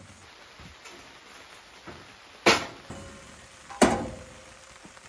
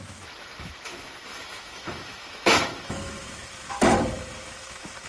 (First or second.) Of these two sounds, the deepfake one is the second